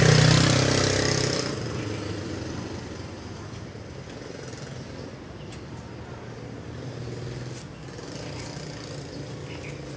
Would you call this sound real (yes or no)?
yes